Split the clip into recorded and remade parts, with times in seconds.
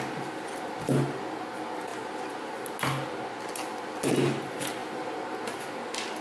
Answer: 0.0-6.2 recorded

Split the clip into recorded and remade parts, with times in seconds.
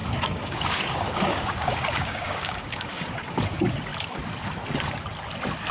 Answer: 0.0-3.4 remade; 3.4-5.7 recorded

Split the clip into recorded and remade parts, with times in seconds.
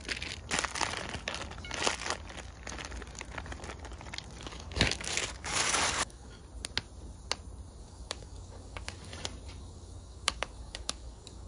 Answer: 0.0-4.4 recorded; 4.4-6.4 remade; 6.4-7.8 recorded; 7.8-9.1 remade; 9.1-9.6 recorded; 9.6-11.5 remade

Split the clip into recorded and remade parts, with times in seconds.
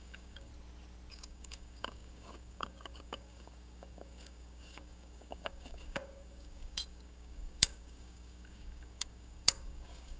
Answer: 0.0-0.5 remade; 0.5-1.1 recorded; 1.1-10.2 remade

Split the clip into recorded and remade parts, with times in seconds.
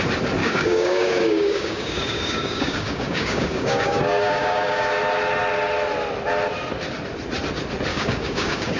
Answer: 0.0-0.4 recorded; 0.4-5.0 remade; 5.0-7.9 recorded; 7.9-8.8 remade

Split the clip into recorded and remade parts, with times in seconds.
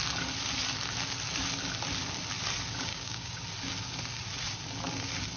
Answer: 0.0-2.9 recorded; 2.9-3.4 remade; 3.4-5.4 recorded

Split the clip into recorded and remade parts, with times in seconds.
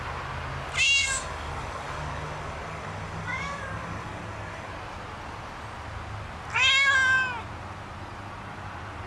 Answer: 0.0-1.0 recorded; 1.0-4.7 remade; 4.7-9.1 recorded